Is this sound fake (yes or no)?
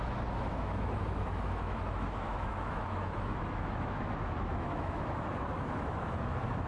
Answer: yes